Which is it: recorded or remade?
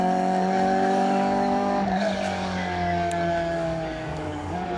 remade